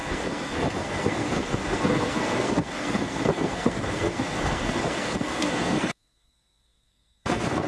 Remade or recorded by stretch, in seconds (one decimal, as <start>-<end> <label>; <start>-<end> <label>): 0.0-7.7 remade